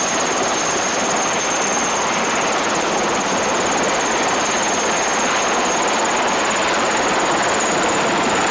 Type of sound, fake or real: real